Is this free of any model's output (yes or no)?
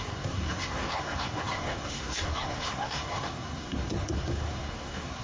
no